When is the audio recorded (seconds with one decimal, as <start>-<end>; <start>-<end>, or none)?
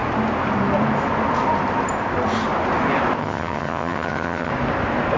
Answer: 0.0-3.2; 4.5-5.2